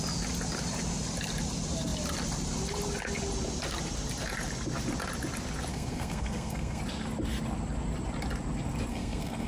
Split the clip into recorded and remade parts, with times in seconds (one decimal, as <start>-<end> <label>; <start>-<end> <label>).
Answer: 0.0-5.7 recorded; 5.7-6.8 remade; 6.8-8.9 recorded; 8.9-9.5 remade